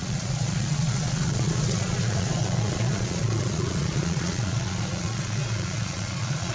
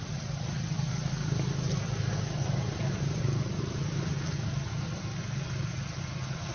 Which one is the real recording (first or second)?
second